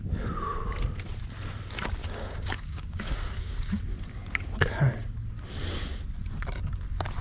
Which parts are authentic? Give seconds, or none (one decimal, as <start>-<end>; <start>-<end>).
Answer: 0.0-2.0; 3.8-7.2